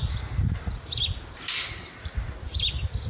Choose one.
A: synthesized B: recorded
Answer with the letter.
B